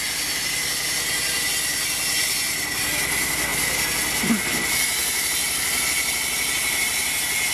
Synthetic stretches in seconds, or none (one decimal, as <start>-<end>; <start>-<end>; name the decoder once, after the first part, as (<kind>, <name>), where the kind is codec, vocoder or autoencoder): 5.0-6.1 (vocoder, BigVGAN v2)